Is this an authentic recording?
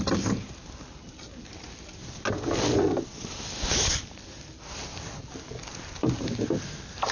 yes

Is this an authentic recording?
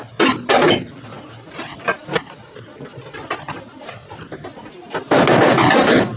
yes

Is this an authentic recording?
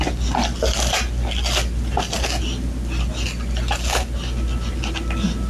yes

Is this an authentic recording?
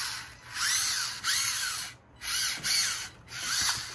yes